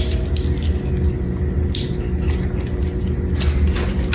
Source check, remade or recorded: recorded